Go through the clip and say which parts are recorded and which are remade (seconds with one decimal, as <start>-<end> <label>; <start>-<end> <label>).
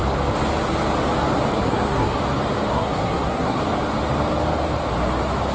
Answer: 0.0-1.5 recorded; 1.5-2.2 remade; 2.2-2.7 recorded; 2.7-3.6 remade; 3.6-5.5 recorded